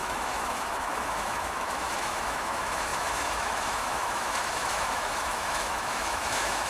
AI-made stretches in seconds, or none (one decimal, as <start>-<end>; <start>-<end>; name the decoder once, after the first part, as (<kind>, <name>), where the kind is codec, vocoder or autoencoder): 0.0-6.7 (autoencoder, DAC-VAE)